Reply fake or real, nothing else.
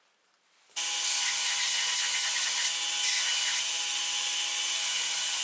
real